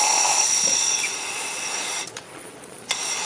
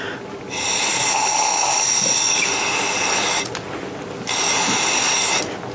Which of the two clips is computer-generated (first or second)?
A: first